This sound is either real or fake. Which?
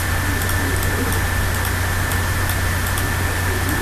real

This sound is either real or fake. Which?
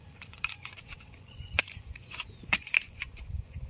fake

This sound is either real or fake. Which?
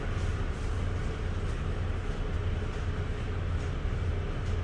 real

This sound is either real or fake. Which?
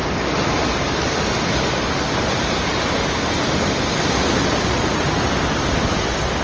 real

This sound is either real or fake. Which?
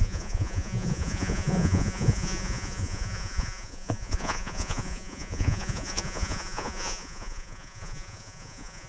fake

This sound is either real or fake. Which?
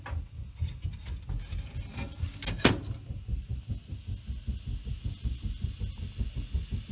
real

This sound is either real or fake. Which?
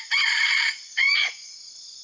fake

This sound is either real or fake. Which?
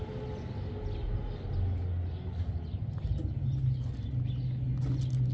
real